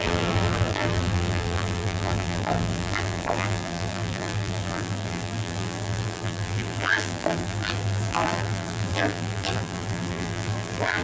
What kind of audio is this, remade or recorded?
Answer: remade